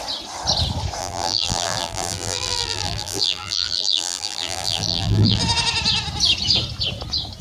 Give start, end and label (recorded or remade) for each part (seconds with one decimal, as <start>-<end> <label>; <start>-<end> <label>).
0.0-1.0 recorded; 1.0-5.4 remade; 5.4-7.4 recorded